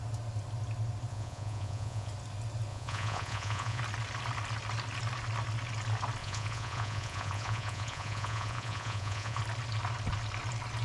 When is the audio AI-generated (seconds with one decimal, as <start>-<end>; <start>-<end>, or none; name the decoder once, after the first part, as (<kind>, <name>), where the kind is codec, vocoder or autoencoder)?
1.1-2.1 (vocoder, Vocos); 2.7-3.8; 6.2-9.4